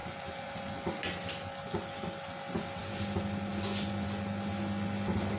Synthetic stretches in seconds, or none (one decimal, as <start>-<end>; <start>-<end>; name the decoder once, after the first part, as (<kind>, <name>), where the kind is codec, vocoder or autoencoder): 0.0-0.6 (vocoder, BigVGAN v2)